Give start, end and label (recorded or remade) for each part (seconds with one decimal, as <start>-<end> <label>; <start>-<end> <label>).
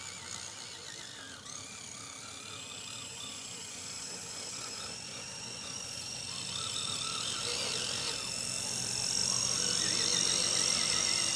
0.0-3.0 recorded; 3.0-6.2 remade; 6.2-11.4 recorded